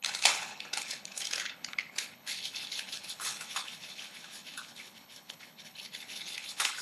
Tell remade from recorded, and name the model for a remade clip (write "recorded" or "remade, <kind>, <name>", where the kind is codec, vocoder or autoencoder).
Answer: remade, codec, HILCodec